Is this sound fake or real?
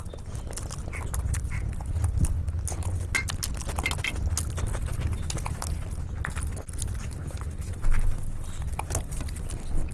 real